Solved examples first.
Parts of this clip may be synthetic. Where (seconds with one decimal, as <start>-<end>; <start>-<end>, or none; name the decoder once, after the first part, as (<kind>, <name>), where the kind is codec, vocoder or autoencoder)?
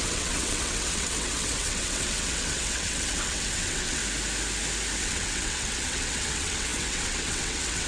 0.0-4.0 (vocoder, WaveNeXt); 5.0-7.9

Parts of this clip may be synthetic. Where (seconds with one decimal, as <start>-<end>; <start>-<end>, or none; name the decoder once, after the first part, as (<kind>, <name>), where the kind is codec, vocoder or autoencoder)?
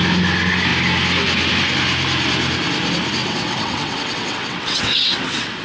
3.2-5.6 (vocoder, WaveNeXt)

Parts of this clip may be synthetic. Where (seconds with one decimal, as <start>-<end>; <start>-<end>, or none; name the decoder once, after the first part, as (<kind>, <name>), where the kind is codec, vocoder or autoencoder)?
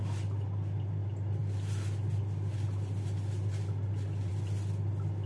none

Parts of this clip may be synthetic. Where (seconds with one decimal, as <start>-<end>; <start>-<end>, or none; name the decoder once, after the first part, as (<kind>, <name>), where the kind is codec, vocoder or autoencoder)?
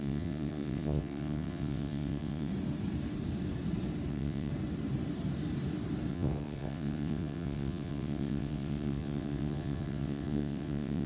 0.0-2.5 (vocoder, WaveNeXt); 4.1-4.5; 6.1-11.1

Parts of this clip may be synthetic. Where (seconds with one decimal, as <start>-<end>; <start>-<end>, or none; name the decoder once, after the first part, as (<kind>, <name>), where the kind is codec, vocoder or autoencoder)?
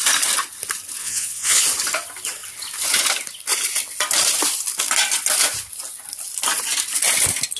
1.0-1.6 (vocoder, WaveNeXt)